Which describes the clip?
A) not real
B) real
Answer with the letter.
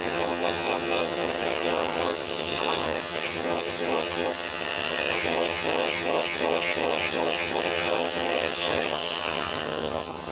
A